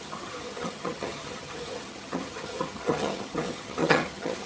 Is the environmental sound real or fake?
fake